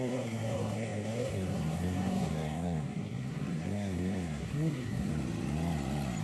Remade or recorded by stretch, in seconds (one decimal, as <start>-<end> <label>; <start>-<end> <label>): 0.0-5.1 remade; 5.1-6.2 recorded